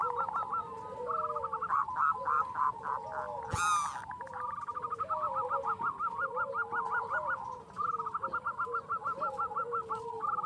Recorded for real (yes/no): yes